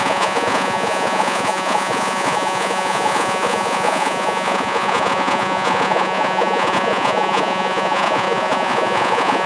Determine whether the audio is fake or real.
fake